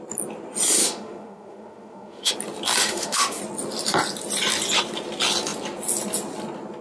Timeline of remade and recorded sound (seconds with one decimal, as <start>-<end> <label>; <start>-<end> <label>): 0.0-0.8 recorded; 0.8-2.3 remade; 2.3-2.8 recorded; 2.8-3.4 remade; 3.4-6.8 recorded